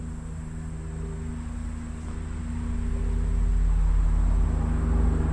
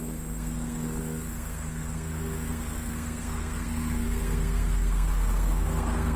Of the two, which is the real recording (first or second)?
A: first